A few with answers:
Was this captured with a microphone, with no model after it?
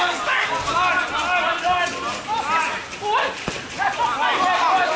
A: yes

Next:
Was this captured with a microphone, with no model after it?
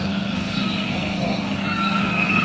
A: no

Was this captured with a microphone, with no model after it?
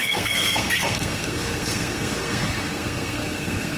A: no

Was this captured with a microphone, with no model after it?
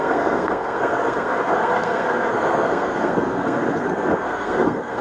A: no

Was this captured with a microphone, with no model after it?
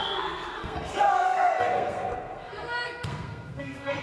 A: no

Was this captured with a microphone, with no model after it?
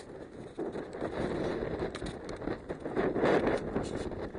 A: yes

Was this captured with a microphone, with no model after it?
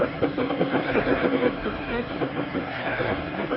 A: no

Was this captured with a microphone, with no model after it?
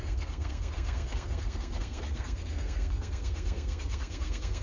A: no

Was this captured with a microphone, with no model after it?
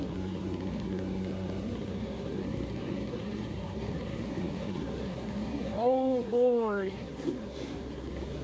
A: no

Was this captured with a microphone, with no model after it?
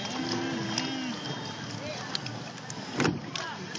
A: yes